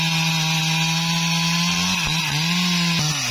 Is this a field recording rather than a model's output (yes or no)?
yes